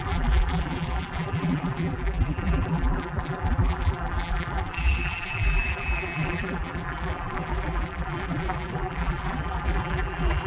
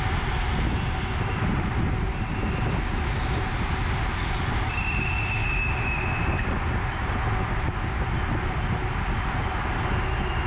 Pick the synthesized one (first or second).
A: first